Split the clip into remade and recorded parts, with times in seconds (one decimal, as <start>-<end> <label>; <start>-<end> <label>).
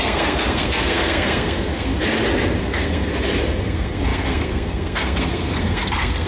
0.0-1.9 remade; 1.9-2.6 recorded; 2.6-3.1 remade; 3.1-3.6 recorded; 3.6-6.3 remade